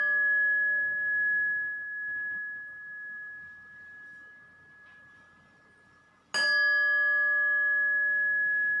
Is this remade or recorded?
recorded